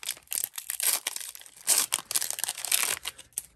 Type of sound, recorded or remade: recorded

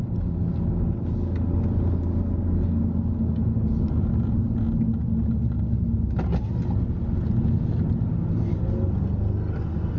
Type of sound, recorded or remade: recorded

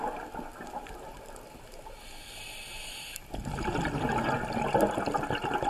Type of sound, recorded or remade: recorded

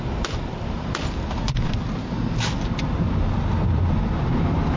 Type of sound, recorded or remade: recorded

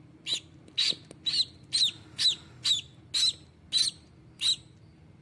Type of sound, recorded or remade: recorded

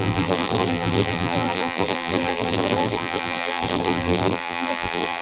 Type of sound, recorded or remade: remade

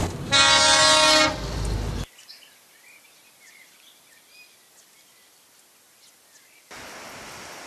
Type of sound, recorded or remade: recorded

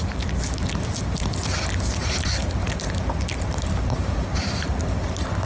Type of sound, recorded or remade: recorded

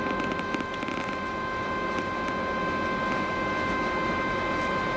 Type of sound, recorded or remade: recorded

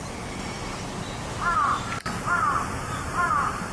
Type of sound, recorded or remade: recorded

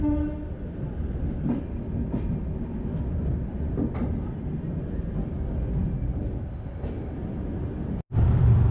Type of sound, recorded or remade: recorded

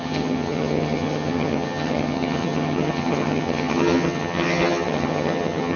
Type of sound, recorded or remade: remade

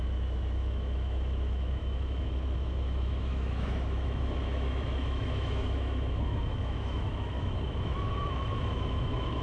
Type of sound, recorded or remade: remade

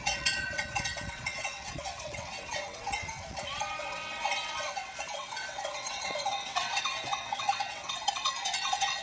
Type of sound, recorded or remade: remade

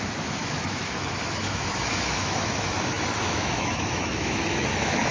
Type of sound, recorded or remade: remade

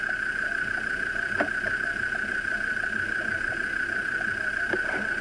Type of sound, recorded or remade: recorded